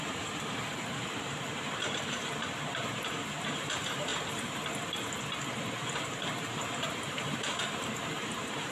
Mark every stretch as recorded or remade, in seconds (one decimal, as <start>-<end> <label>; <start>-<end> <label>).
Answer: 0.0-4.1 remade; 4.1-5.9 recorded; 5.9-8.7 remade